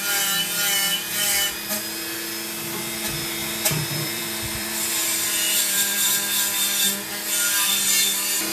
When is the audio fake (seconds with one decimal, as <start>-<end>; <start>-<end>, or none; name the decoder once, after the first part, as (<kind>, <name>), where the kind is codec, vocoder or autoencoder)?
3.4-6.5 (vocoder, BigVGAN v2)